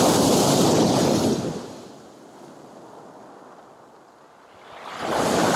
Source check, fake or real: real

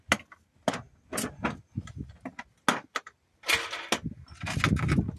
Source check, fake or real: real